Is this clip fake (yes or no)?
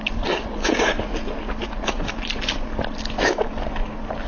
no